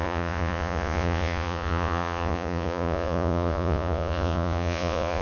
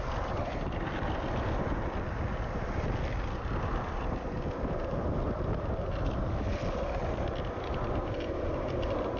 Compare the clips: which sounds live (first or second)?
second